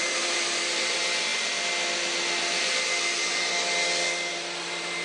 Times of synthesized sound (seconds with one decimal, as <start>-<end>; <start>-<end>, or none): 0.0-1.3; 4.3-5.0